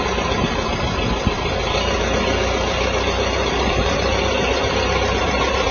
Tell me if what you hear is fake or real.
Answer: fake